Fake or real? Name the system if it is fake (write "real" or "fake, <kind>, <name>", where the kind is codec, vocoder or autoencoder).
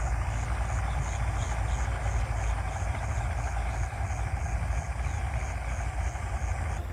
real